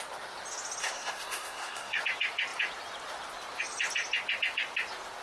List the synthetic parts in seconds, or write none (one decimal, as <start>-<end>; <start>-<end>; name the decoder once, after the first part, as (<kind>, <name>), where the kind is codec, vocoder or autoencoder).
0.8-2.0 (codec, SNAC)